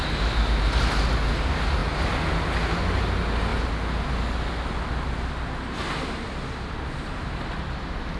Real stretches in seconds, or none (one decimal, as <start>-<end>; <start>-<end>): 0.0-8.2